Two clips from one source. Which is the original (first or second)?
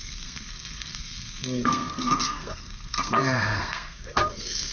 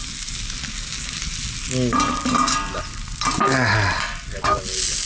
second